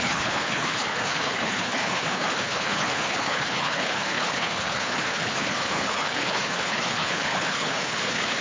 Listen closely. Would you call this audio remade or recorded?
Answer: remade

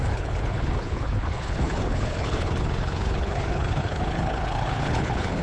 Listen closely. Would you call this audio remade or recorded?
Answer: remade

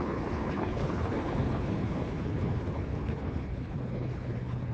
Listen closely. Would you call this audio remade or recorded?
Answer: remade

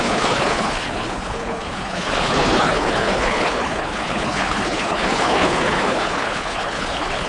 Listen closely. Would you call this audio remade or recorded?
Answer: remade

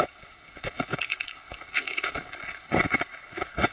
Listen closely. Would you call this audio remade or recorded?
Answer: remade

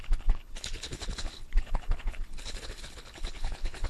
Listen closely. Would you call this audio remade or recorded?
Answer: remade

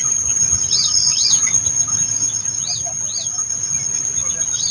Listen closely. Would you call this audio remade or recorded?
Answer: recorded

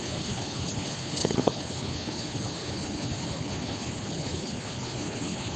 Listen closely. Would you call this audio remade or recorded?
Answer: remade